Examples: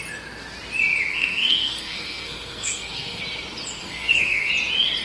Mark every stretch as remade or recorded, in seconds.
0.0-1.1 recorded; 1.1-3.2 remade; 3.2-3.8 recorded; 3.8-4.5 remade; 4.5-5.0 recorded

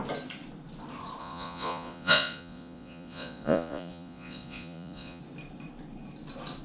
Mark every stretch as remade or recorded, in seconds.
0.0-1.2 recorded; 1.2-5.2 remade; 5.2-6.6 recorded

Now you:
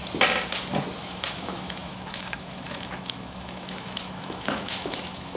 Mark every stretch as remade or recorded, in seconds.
0.0-1.0 recorded; 1.0-5.4 remade

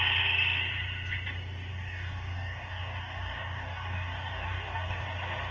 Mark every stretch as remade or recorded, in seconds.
0.0-1.7 recorded; 1.7-5.0 remade; 5.0-5.5 recorded

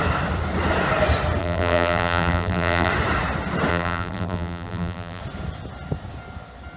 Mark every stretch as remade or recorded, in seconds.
0.0-1.4 recorded; 1.4-2.9 remade; 2.9-3.7 recorded; 3.7-5.2 remade; 5.2-6.8 recorded